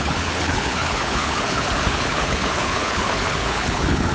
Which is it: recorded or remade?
remade